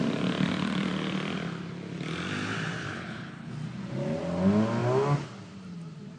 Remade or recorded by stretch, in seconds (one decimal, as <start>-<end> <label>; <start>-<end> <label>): 0.0-2.8 recorded; 2.8-3.5 remade; 3.5-6.2 recorded